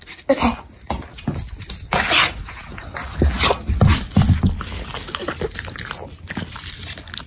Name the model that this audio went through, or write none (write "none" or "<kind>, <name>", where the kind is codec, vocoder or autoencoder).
none